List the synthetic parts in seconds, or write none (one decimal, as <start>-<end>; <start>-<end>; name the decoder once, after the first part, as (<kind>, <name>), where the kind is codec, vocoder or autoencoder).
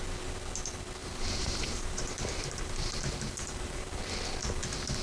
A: 1.0-4.0 (vocoder, BigVGAN v2)